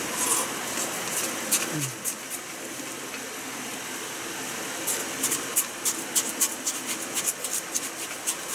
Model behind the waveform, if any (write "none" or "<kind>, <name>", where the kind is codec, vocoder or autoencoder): none